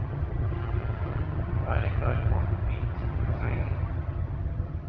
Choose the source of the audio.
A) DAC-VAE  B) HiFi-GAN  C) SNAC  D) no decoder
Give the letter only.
B